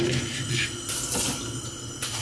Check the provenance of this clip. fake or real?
real